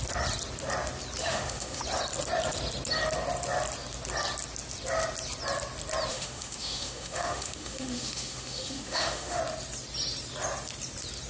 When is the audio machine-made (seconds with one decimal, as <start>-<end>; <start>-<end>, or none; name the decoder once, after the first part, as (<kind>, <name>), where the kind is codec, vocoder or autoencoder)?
1.2-1.8 (autoencoder, DAC-VAE); 6.1-9.4